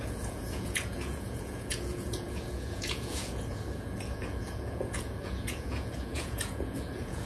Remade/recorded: remade